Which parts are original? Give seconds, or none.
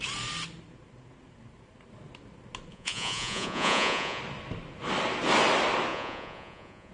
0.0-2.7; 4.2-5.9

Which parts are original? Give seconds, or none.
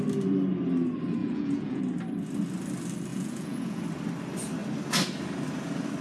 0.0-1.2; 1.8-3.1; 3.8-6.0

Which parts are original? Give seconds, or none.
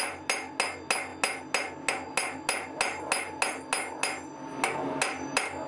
0.0-5.7